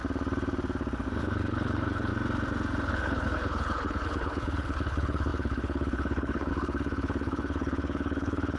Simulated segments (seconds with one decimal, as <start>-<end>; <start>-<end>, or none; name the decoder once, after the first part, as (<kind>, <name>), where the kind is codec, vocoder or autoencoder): 1.2-2.1 (codec, HILCodec); 2.9-8.6

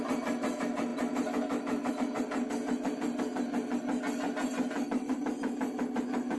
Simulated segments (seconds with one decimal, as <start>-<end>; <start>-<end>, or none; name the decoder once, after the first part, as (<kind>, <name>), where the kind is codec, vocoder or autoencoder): none